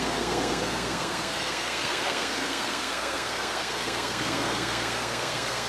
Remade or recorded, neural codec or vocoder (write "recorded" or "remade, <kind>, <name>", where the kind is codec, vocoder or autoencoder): remade, codec, SNAC